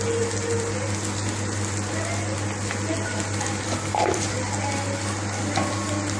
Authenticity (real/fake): real